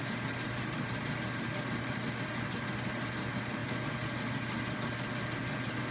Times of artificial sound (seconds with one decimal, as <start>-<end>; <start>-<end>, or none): none